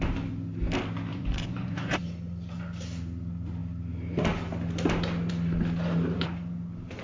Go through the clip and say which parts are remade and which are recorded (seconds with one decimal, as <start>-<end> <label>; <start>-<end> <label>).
0.0-1.1 recorded; 1.1-2.0 remade; 2.0-7.0 recorded